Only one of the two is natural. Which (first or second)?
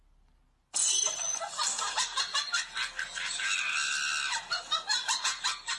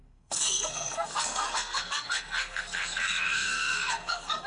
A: first